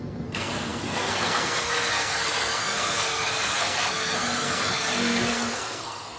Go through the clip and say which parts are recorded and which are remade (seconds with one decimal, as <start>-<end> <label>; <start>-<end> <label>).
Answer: 0.0-6.2 remade